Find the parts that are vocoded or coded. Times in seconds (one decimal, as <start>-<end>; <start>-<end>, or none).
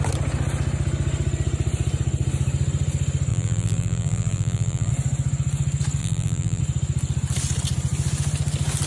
3.3-4.9; 6.0-6.6